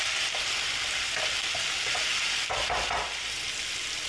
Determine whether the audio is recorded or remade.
recorded